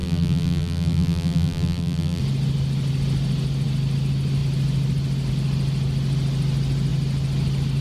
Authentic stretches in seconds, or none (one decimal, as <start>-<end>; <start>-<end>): 2.2-7.8